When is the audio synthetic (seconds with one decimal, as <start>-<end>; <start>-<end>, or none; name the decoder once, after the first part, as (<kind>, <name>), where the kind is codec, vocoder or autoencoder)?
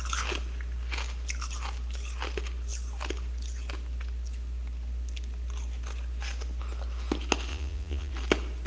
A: 7.5-8.1 (vocoder, Vocos)